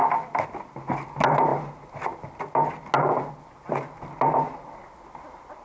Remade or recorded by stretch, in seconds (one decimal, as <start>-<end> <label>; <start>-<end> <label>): 0.0-5.6 recorded